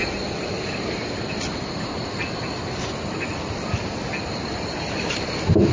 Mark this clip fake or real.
real